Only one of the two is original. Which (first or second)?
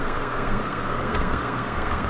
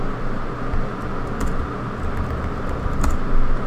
second